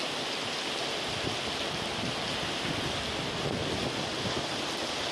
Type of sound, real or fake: real